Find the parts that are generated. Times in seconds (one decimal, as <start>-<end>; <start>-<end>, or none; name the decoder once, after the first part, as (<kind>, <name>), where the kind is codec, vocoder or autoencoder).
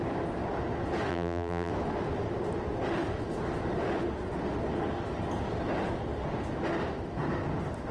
1.1-1.7 (vocoder, BigVGAN v2)